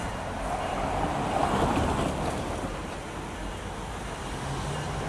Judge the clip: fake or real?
real